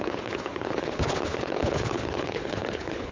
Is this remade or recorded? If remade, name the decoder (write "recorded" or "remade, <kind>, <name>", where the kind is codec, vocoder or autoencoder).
remade, codec, HILCodec